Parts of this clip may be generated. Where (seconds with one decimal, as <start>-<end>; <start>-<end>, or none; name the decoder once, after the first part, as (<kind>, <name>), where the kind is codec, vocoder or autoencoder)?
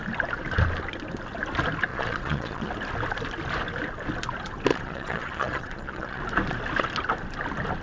1.9-2.7 (vocoder, Vocos); 4.7-6.2